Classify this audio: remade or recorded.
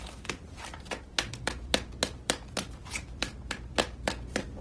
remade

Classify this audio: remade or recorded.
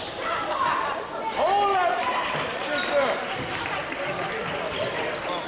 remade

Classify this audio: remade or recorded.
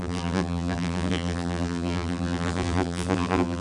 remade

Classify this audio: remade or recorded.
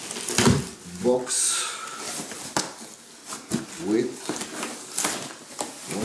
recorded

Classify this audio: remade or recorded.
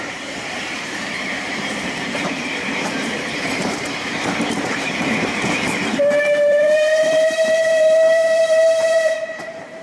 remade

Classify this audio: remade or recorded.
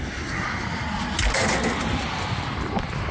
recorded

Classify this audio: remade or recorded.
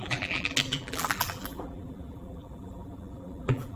remade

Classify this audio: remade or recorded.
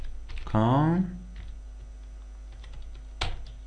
recorded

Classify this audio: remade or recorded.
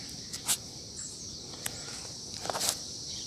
remade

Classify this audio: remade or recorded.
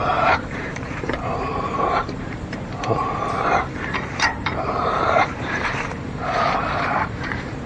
remade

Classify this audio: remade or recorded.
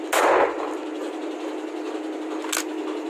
recorded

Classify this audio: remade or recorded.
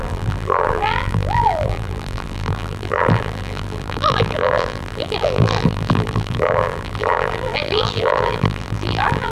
remade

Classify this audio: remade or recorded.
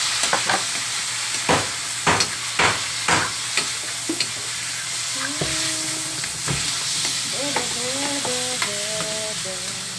recorded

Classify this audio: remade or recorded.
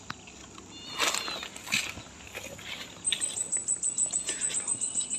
recorded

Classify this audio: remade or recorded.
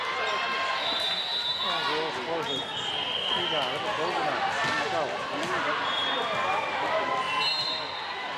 recorded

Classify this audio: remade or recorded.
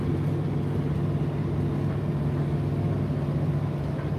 recorded